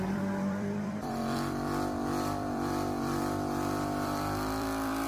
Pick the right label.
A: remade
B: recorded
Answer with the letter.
A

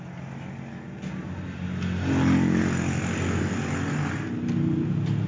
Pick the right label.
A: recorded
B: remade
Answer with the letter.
A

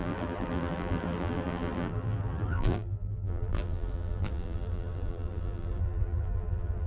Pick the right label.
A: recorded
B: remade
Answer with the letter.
B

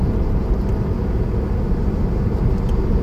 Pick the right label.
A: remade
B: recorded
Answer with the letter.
B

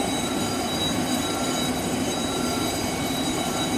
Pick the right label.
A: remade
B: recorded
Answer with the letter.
A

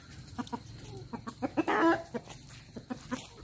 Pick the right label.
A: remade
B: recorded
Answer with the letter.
B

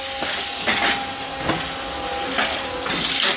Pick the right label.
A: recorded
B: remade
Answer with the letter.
A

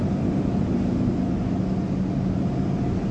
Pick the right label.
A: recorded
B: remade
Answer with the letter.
A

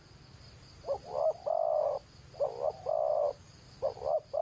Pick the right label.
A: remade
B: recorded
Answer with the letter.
B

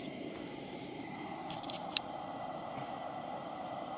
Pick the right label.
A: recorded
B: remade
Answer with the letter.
B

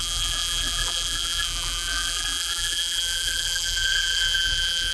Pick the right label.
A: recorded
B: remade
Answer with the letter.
B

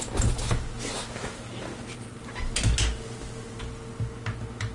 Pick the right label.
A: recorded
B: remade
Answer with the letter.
A